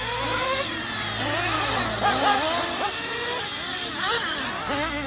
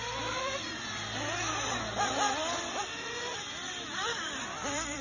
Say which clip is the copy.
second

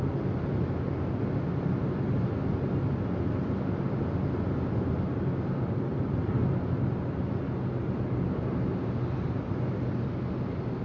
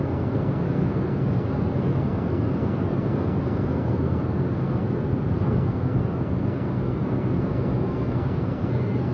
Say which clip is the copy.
second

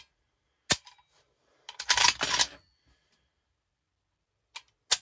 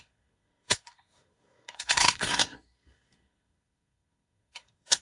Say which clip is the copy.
second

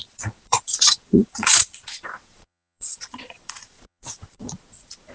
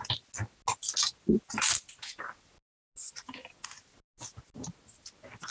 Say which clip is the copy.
first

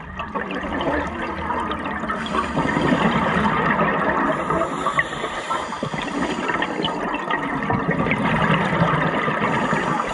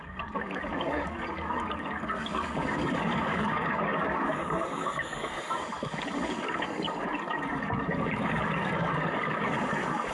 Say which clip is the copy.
second